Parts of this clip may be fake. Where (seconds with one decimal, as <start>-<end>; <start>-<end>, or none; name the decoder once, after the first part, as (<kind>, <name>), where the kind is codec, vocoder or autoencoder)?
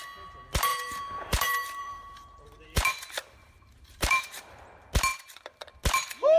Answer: 0.7-4.5 (vocoder, BigVGAN v2); 5.1-5.7